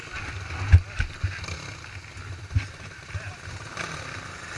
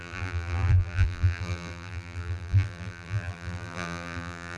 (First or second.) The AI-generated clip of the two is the second